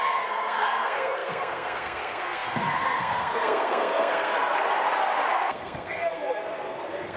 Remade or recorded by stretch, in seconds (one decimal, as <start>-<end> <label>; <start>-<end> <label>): 0.0-4.3 remade; 4.3-5.3 recorded; 5.3-7.2 remade

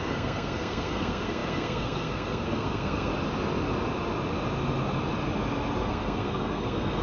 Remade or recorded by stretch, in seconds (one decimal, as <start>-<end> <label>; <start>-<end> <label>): 0.0-3.1 remade; 3.1-5.8 recorded; 5.8-7.0 remade